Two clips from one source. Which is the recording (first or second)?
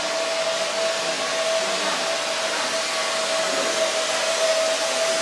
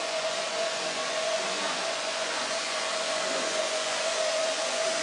first